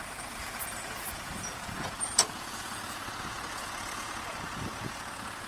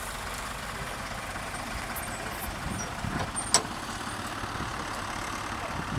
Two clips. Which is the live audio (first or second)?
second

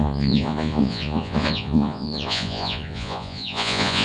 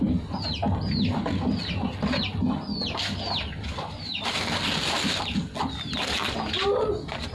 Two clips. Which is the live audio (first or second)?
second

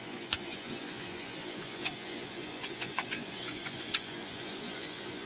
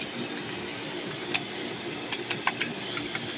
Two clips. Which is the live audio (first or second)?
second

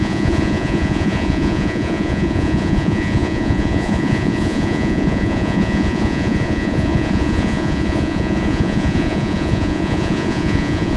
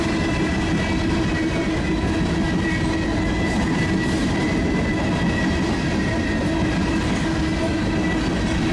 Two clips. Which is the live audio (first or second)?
second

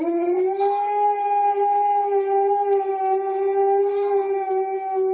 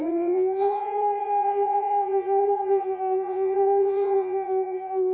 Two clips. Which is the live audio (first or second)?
first